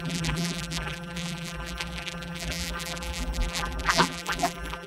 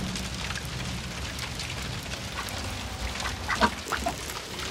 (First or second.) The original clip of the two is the second